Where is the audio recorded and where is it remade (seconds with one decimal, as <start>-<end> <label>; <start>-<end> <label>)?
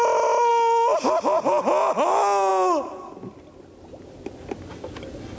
0.0-5.4 recorded